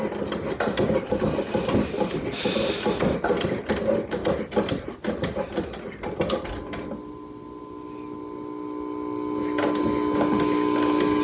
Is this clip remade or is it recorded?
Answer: recorded